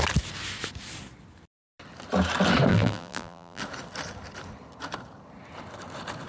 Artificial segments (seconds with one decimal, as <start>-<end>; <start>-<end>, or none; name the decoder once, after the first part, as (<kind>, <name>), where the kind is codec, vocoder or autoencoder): 2.7-3.6 (vocoder, BigVGAN v2)